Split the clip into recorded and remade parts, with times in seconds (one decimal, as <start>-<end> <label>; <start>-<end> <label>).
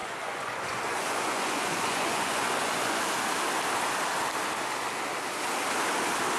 0.0-3.0 remade; 3.0-6.4 recorded